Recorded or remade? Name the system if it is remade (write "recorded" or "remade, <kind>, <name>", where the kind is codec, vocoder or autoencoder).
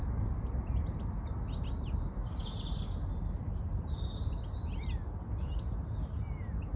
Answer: recorded